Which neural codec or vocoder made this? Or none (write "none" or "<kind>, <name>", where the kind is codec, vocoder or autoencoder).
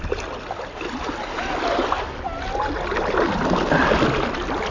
none